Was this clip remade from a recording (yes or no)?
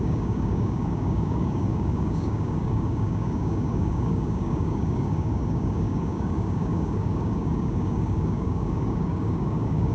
yes